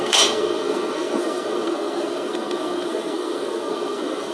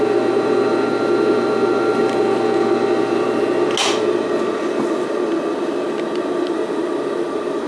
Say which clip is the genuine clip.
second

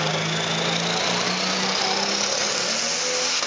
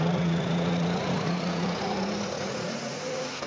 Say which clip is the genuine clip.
first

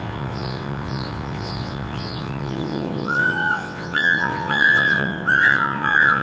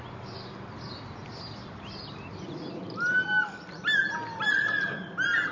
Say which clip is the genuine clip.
second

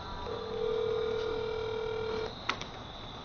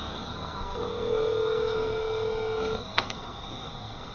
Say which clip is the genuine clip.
first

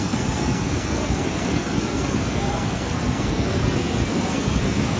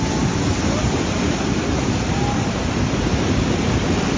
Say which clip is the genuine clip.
second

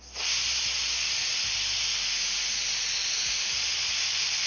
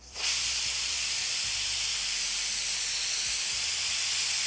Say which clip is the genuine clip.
first